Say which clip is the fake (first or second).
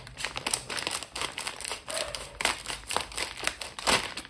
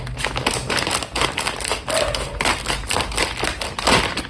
first